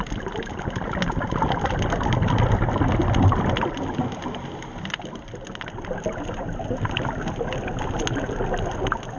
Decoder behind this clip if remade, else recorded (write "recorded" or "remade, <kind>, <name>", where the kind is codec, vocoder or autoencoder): recorded